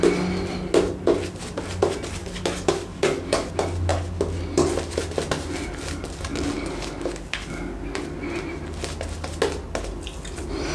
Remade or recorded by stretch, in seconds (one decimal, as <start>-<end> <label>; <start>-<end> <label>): 0.0-2.2 recorded; 2.2-3.5 remade; 3.5-6.3 recorded; 6.3-8.2 remade; 8.2-10.7 recorded